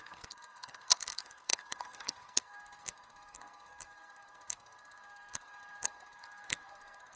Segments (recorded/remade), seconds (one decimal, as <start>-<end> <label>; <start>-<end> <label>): 0.0-7.2 remade